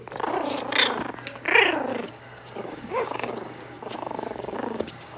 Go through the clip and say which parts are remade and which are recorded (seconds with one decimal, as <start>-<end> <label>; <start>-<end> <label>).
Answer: 0.0-1.9 recorded; 1.9-5.2 remade